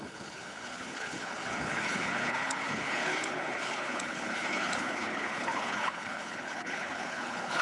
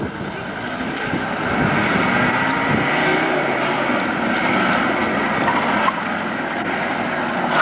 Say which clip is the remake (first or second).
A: first